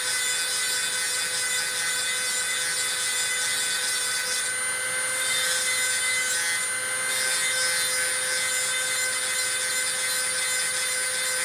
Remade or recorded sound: recorded